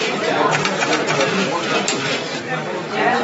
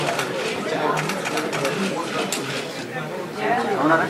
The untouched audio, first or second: second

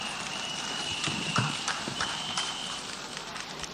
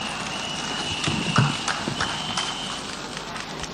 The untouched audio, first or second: second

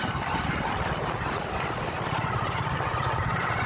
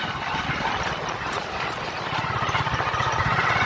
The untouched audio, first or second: second